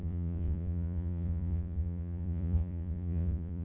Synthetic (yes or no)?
yes